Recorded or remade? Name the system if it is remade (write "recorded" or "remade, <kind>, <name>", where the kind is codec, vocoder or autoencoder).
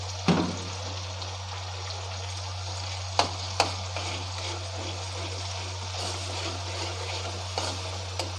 recorded